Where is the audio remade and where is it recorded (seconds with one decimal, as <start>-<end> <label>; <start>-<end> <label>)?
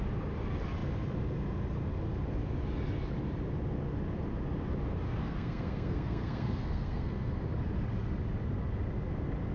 0.0-5.2 recorded; 5.2-7.3 remade; 7.3-9.5 recorded